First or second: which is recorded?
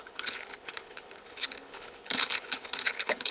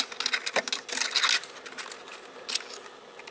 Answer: second